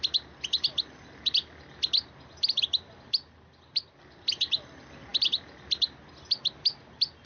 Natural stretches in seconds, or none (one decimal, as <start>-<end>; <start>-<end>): 0.0-7.3